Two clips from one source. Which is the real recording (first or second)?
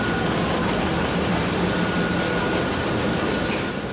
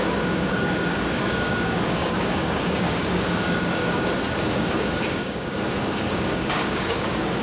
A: first